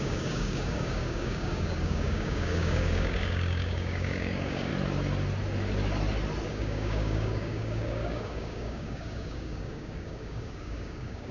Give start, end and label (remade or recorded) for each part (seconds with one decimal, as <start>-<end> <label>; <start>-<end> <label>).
0.0-4.7 remade; 4.7-6.5 recorded; 6.5-11.3 remade